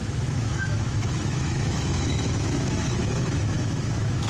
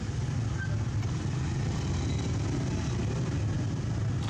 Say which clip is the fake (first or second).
first